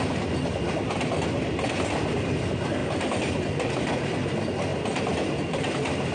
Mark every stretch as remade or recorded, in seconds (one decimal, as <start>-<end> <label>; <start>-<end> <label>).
0.0-2.8 recorded; 2.8-3.7 remade; 3.7-4.7 recorded; 4.7-5.4 remade; 5.4-6.1 recorded